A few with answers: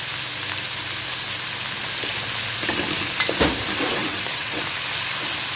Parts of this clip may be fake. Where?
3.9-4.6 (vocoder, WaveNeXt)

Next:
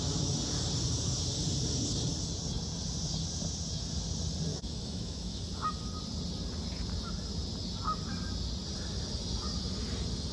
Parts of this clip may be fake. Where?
4.5-5.4 (autoencoder, DAC-VAE)

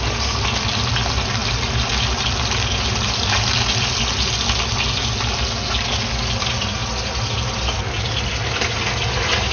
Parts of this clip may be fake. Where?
none

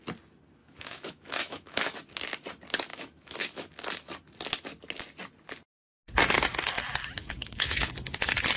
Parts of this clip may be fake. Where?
0.6-1.9 (autoencoder, DAC-VAE); 2.9-3.7; 7.2-7.9

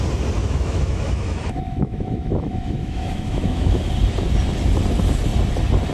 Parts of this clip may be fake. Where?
0.4-3.9 (autoencoder, DAC-VAE)

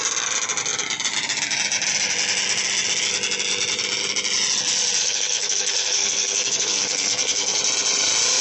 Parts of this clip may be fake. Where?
5.0-7.6 (codec, SNAC)

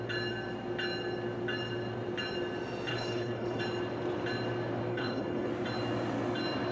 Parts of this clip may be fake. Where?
2.9-3.6 (codec, HILCodec); 4.9-5.5

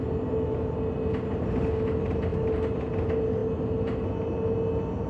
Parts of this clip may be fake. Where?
none